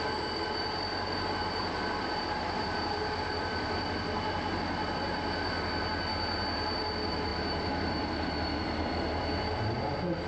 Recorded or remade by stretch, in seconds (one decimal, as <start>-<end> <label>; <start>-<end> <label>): 0.0-1.4 recorded; 1.4-4.6 remade; 4.6-7.3 recorded; 7.3-8.9 remade; 8.9-10.3 recorded